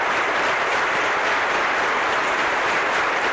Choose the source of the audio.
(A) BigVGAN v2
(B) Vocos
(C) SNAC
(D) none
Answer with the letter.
D